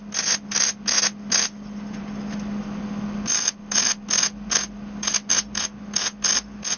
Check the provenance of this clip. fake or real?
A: real